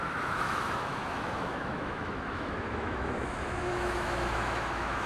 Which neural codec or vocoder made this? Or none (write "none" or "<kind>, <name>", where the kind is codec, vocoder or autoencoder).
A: autoencoder, DAC-VAE